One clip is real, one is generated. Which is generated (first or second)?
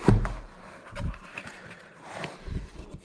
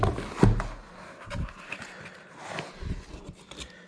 first